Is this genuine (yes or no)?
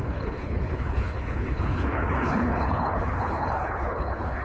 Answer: no